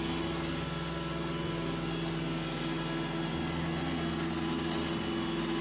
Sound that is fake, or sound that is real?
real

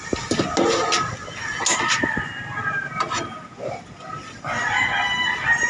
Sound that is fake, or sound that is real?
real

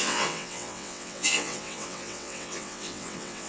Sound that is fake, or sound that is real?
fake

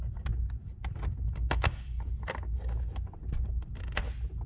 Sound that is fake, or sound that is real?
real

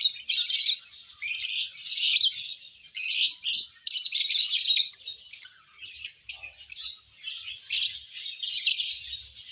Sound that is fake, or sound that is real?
real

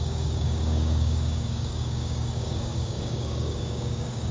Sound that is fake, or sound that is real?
fake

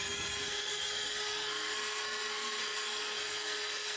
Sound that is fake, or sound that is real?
fake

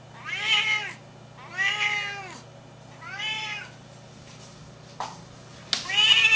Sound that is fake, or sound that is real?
real